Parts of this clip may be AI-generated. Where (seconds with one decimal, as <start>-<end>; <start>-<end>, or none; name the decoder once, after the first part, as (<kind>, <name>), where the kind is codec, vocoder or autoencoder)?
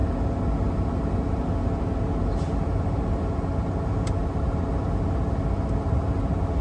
none